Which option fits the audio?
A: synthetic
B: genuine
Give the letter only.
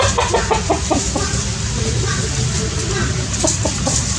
B